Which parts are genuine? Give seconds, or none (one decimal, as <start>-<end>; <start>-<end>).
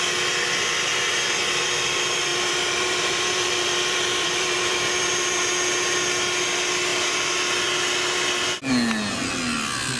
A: 0.0-2.3; 5.1-10.0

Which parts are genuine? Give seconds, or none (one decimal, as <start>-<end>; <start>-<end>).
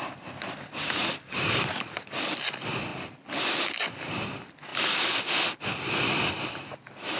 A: 2.9-3.7; 4.7-6.4